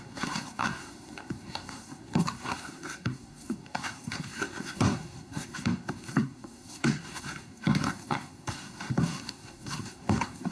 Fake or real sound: fake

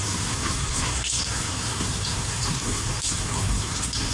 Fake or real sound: fake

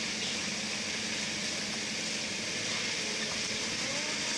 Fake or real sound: real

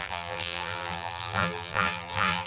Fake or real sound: fake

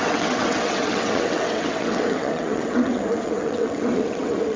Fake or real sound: fake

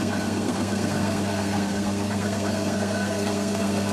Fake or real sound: fake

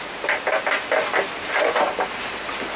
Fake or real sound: real